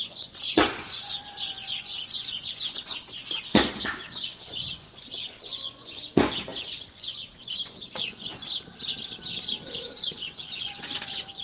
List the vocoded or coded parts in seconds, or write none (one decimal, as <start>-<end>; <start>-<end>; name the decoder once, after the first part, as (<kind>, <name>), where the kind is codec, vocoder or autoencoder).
0.0-8.3 (vocoder, Vocos); 10.0-11.4